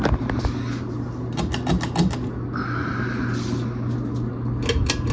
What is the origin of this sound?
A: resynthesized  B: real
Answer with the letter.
B